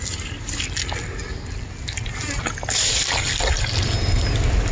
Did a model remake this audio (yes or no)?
no